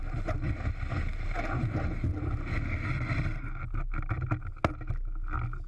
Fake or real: real